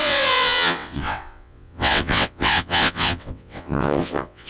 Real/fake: fake